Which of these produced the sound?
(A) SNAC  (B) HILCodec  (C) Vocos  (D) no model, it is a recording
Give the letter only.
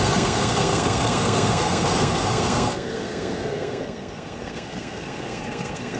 A